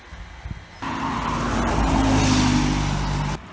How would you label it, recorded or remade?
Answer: recorded